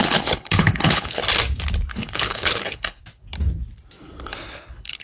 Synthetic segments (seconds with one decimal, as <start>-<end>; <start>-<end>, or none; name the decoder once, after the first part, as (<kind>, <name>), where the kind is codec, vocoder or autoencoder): 0.0-1.2 (codec, HILCodec); 1.9-3.0; 4.0-5.0